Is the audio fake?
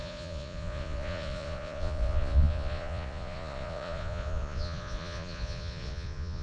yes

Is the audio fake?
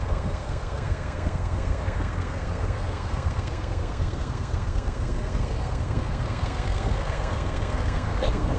yes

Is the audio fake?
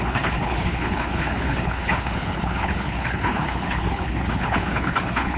yes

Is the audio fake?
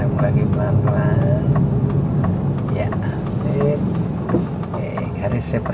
no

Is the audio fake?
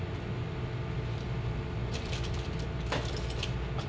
yes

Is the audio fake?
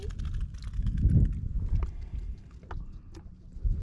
no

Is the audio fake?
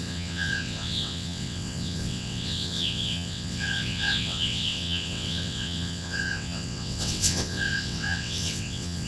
yes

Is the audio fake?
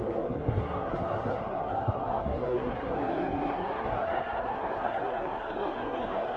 yes